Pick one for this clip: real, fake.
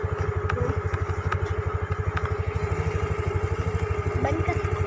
real